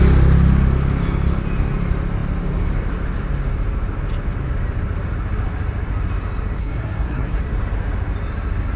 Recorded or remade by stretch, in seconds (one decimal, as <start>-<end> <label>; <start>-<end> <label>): 0.0-6.6 recorded; 6.6-7.4 remade; 7.4-8.8 recorded